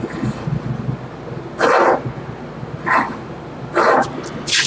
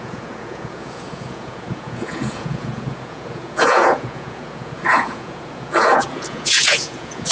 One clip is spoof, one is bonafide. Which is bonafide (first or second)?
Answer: first